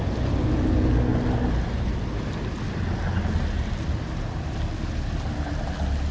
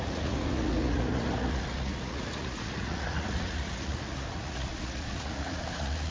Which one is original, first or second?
first